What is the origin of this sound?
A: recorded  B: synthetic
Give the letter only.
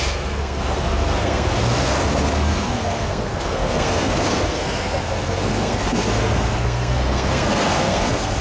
B